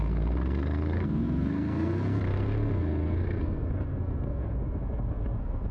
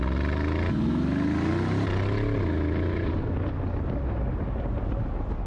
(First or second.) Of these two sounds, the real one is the second